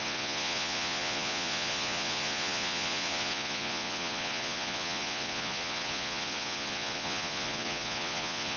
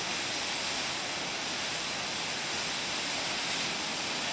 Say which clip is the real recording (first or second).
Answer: second